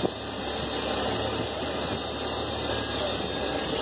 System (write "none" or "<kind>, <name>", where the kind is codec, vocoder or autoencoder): none